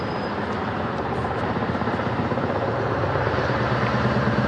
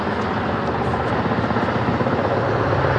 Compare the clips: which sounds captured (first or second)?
second